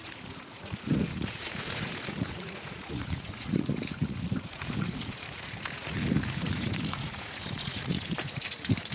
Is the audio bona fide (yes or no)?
no